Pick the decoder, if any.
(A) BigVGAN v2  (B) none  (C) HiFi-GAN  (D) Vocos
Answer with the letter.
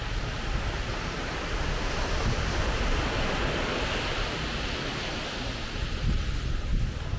B